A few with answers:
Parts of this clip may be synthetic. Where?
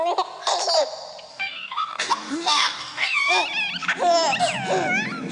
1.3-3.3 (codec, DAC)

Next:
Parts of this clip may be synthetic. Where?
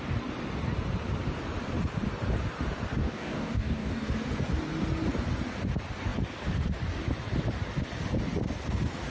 3.0-4.1 (codec, DAC)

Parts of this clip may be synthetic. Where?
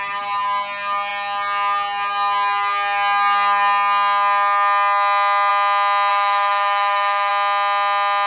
6.1-7.3 (codec, DAC)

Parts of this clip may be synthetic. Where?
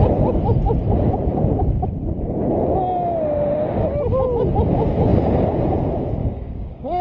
6.2-7.0 (codec, DAC)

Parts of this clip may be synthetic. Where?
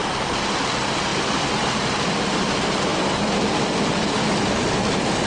none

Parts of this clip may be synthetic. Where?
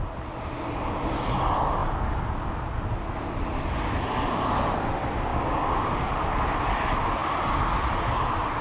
5.3-5.9 (codec, DAC)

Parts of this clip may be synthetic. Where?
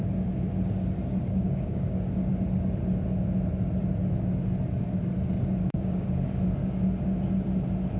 1.2-2.3 (codec, DAC); 5.6-6.8